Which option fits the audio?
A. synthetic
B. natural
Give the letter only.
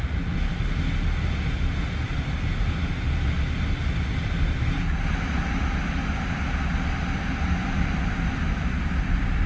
B